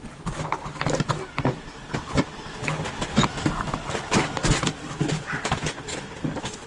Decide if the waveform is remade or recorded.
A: recorded